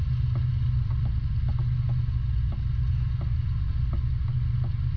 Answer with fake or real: real